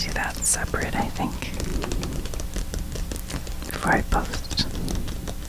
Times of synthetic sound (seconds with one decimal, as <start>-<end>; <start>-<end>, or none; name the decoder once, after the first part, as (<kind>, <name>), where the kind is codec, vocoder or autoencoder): none